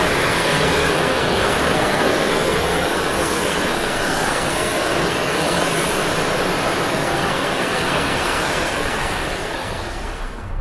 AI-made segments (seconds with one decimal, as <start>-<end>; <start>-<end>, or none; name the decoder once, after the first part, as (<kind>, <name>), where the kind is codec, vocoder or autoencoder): 0.0-6.0 (codec, SNAC); 6.9-10.6